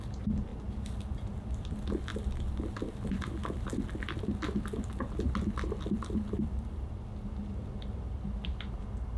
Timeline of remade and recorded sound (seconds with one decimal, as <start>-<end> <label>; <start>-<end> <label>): 0.0-9.2 recorded

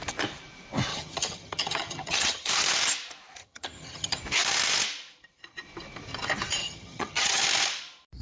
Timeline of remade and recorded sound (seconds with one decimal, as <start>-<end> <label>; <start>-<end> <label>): 0.0-0.9 recorded; 0.9-2.5 remade; 2.5-3.4 recorded; 3.4-4.2 remade; 4.2-6.6 recorded; 6.6-7.4 remade; 7.4-8.2 recorded